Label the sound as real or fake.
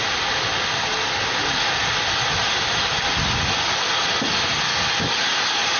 real